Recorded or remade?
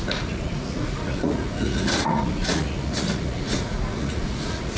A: remade